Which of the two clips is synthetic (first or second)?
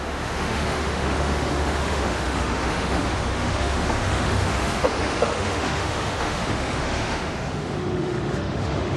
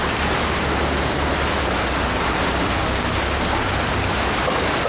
first